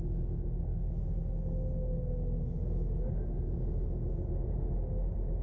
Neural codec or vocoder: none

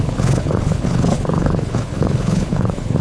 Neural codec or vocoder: codec, HILCodec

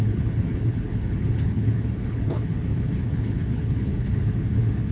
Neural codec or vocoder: codec, HILCodec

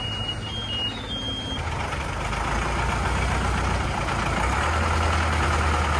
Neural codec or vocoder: none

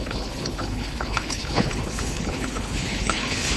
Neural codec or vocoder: codec, HILCodec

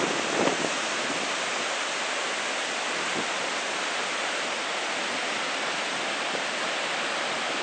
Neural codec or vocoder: none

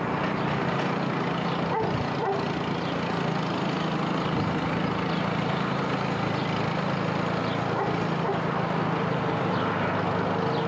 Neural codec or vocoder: none